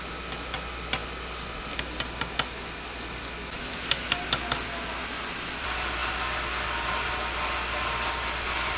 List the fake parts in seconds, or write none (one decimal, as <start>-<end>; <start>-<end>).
none